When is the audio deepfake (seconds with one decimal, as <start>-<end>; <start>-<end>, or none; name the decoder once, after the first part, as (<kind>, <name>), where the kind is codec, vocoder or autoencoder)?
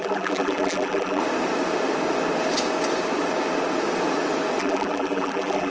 0.0-1.2 (vocoder, BigVGAN v2); 4.6-5.7